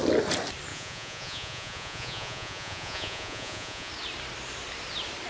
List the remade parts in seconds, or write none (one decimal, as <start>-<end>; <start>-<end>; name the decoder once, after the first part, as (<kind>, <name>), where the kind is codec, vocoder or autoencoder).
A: 0.7-3.9 (vocoder, Vocos)